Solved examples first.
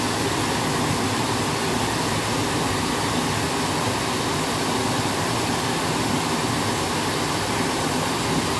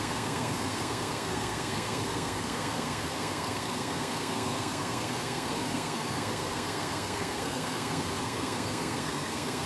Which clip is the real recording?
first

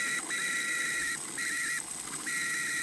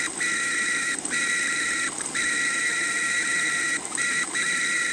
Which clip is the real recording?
first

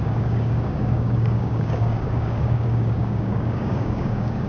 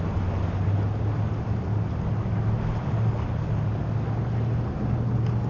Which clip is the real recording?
second